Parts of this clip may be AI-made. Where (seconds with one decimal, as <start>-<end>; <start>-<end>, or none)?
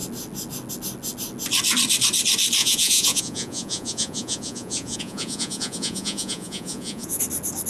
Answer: 2.6-7.2